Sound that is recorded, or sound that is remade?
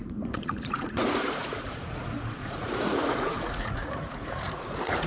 remade